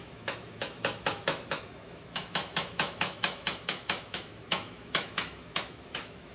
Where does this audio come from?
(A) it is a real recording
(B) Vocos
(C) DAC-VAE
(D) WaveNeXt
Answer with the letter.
C